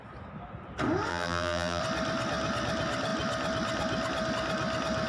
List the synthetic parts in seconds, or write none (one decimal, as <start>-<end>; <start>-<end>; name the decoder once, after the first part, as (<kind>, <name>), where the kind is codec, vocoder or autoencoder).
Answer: 1.1-1.8 (vocoder, BigVGAN v2)